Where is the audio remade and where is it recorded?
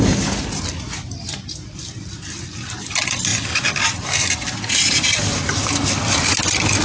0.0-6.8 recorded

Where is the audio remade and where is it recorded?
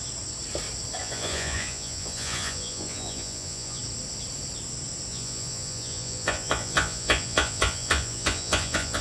0.0-1.0 recorded; 1.0-3.8 remade; 3.8-5.1 recorded; 5.1-9.0 remade